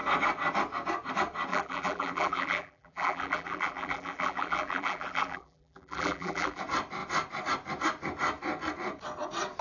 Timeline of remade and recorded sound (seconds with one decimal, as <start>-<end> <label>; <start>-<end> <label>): 0.0-1.5 recorded; 1.5-6.6 remade; 6.6-9.6 recorded